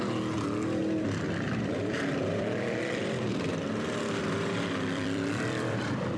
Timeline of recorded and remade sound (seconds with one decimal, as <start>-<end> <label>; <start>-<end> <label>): 0.0-0.8 recorded; 0.8-3.6 remade; 3.6-4.2 recorded; 4.2-6.2 remade